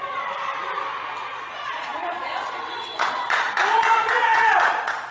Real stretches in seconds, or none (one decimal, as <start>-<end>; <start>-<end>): 0.5-1.5